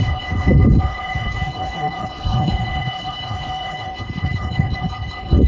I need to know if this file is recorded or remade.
remade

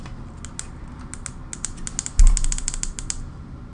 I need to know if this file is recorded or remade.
recorded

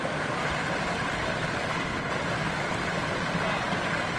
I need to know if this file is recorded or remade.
recorded